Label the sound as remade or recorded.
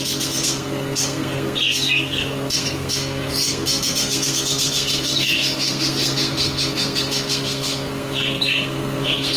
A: remade